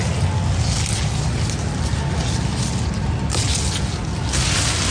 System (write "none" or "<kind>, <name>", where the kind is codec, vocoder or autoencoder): none